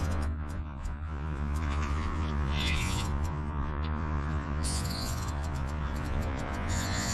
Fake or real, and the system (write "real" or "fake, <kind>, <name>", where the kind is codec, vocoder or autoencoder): fake, vocoder, Vocos